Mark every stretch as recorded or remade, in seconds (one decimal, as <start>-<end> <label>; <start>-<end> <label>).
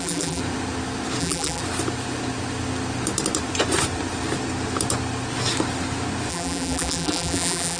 0.0-0.4 remade; 0.4-1.2 recorded; 1.2-1.6 remade; 1.6-6.3 recorded; 6.3-7.8 remade